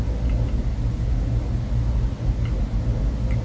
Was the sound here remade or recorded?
recorded